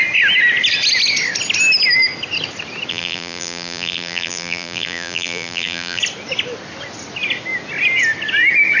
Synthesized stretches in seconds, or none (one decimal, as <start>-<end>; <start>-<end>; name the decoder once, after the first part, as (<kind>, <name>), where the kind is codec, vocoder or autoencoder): 2.9-6.0 (vocoder, BigVGAN v2)